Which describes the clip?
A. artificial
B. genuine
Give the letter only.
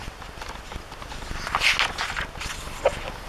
B